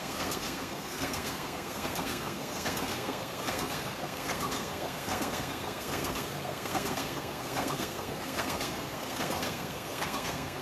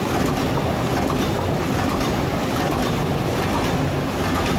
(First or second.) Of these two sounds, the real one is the second